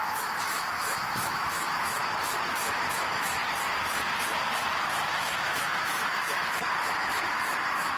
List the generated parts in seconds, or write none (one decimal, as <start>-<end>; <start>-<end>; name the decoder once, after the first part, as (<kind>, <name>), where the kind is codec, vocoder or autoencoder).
0.0-3.4 (autoencoder, DAC-VAE); 5.1-8.0